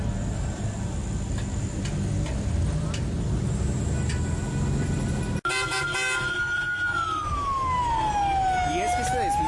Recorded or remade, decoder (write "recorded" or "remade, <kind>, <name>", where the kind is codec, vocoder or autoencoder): recorded